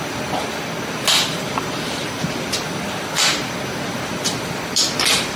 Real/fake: real